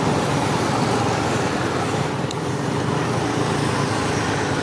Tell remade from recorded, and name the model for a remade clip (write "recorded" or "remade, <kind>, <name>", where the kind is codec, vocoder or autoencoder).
recorded